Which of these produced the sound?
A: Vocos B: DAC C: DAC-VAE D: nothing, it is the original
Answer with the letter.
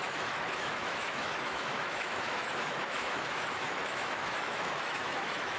C